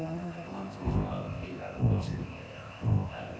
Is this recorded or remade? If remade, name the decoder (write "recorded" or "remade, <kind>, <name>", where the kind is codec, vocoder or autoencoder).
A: remade, codec, ZipCodec